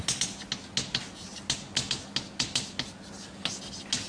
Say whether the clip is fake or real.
real